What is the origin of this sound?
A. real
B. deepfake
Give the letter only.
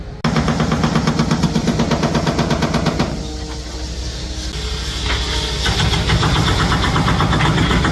A